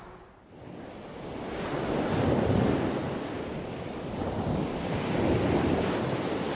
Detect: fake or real real